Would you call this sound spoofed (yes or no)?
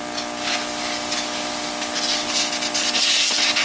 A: no